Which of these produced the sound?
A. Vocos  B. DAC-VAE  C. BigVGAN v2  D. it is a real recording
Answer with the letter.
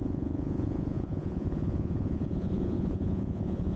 A